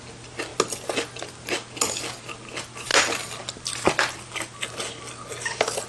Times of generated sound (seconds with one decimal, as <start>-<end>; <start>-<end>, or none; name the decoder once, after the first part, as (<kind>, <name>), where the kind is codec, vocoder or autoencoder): none